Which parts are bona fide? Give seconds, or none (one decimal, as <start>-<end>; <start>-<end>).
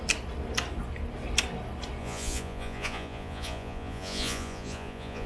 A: 0.0-2.0